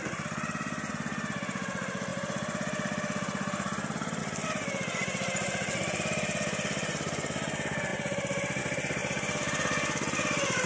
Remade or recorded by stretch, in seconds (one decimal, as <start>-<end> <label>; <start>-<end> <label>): 0.0-2.1 recorded; 2.1-4.2 remade; 4.2-7.9 recorded; 7.9-8.6 remade; 8.6-10.7 recorded

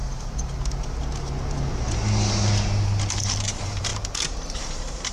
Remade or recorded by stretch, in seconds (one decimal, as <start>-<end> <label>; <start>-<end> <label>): 0.0-3.1 recorded; 3.1-5.1 remade

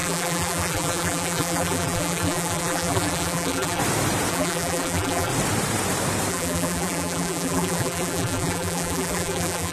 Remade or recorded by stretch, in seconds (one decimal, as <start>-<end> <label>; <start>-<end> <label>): 0.0-3.8 remade; 3.8-4.3 recorded; 4.3-5.3 remade; 5.3-6.3 recorded; 6.3-9.7 remade

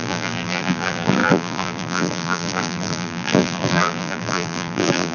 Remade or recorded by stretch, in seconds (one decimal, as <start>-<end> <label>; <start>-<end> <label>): 0.0-5.1 remade

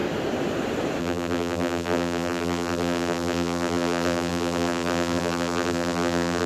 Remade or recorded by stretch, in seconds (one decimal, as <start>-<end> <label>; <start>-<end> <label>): 0.0-1.0 recorded; 1.0-6.5 remade

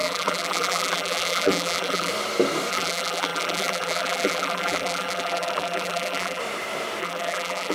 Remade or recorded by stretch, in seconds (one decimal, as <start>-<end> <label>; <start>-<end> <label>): 0.0-2.1 remade; 2.1-2.7 recorded; 2.7-6.4 remade; 6.4-7.0 recorded; 7.0-7.7 remade